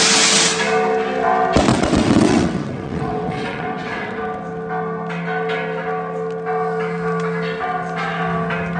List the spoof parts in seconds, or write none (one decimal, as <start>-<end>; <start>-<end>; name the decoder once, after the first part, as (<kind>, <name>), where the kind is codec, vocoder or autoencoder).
1.7-4.2 (vocoder, WaveNeXt)